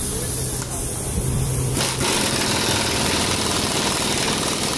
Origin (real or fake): fake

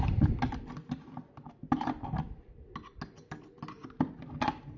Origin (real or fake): real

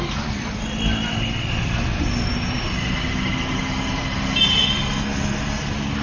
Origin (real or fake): real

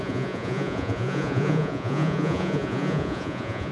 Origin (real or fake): fake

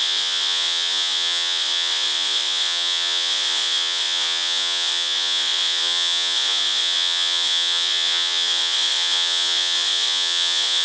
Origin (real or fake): fake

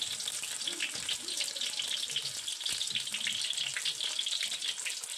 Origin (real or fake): real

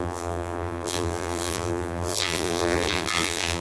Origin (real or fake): fake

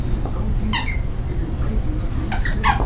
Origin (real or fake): real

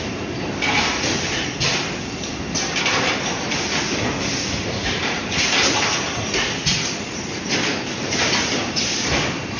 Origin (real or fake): fake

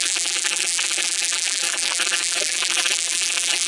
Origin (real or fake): fake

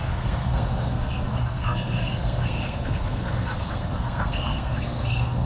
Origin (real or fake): fake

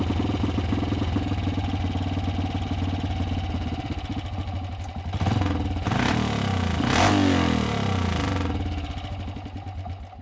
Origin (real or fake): real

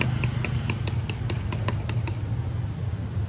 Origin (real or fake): real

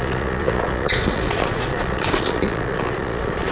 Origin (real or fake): fake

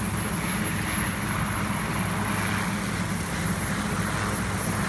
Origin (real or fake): real